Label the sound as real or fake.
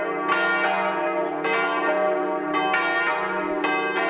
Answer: real